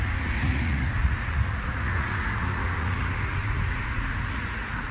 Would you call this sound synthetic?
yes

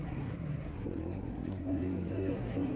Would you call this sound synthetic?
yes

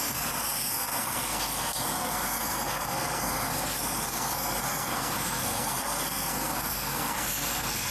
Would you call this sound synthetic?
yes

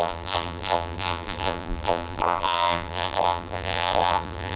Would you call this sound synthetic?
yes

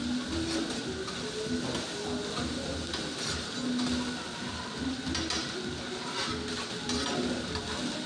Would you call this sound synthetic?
no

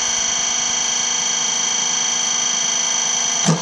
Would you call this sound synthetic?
no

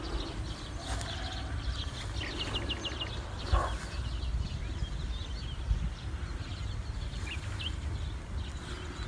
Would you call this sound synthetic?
no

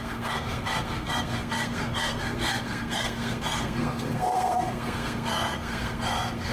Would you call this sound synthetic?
yes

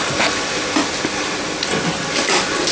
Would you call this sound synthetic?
no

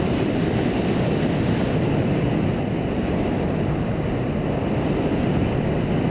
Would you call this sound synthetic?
no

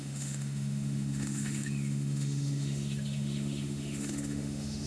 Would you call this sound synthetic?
yes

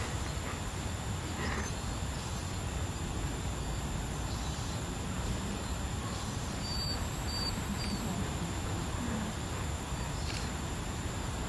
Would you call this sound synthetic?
yes